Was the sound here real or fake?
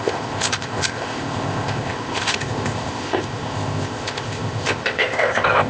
fake